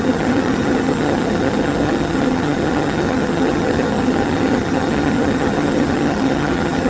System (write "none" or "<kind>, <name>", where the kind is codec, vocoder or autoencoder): vocoder, HiFi-GAN